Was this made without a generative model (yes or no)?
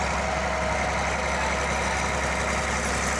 yes